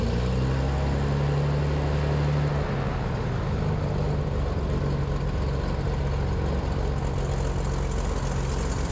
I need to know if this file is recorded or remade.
recorded